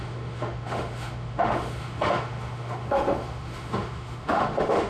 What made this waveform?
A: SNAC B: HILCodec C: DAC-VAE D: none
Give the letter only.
C